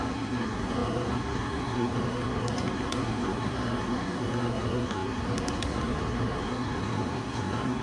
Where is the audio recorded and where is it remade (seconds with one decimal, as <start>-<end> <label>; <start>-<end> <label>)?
0.0-7.8 remade